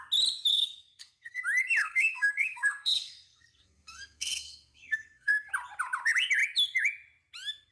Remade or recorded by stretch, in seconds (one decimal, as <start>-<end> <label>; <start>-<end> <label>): 0.0-0.5 recorded; 0.5-1.4 remade; 1.4-1.8 recorded; 1.8-5.5 remade; 5.5-7.7 recorded